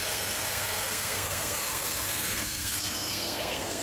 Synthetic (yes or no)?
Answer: yes